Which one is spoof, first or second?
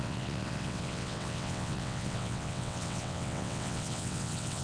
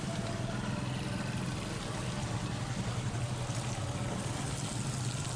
first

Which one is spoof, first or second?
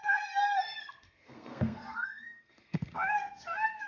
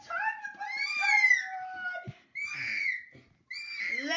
first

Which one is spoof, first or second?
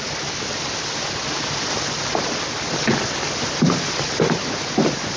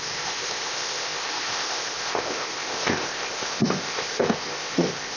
second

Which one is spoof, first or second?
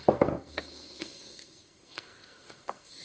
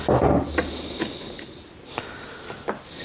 first